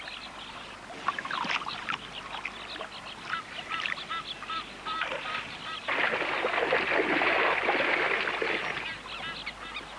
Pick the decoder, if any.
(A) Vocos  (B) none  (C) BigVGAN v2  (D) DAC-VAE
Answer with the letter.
B